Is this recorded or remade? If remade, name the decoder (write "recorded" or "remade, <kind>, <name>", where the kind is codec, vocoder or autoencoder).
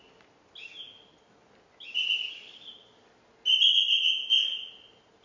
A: recorded